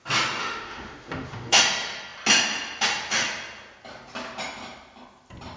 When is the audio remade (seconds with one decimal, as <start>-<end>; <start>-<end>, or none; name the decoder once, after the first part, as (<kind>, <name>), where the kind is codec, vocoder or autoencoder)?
0.4-1.6 (autoencoder, DAC-VAE)